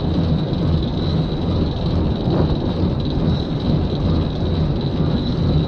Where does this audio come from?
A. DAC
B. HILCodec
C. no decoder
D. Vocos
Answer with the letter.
C